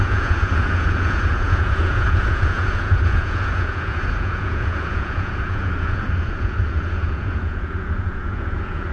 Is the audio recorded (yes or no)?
no